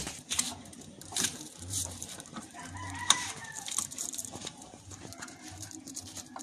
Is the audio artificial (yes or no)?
yes